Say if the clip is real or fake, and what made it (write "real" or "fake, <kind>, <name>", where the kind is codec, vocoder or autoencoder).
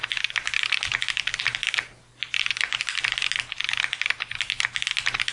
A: real